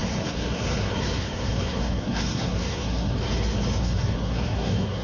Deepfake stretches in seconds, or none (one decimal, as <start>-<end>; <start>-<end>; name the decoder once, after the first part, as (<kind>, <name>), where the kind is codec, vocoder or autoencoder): 0.0-3.2 (codec, SNAC); 3.8-5.0